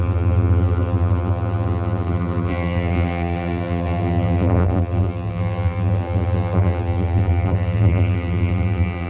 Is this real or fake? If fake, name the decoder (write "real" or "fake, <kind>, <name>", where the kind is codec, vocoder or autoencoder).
fake, vocoder, BigVGAN v2